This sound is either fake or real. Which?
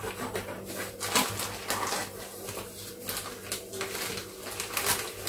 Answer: real